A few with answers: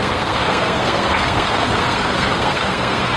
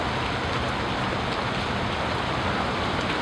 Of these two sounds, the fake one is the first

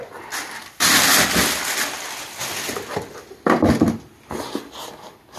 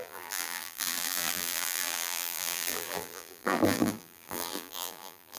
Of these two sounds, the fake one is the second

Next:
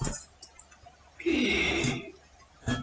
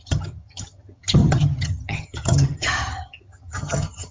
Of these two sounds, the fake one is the second